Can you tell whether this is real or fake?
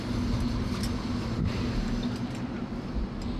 real